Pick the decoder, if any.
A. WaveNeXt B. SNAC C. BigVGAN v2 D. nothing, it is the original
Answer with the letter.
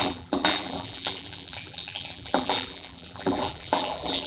C